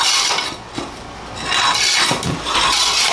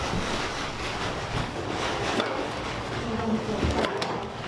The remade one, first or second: second